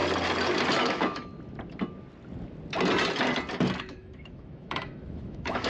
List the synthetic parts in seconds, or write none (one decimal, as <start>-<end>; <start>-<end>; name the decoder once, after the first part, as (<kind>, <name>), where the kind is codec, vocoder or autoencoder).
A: 0.8-1.3 (autoencoder, DAC-VAE); 3.8-5.7